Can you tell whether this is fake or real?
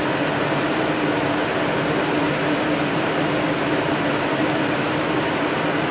real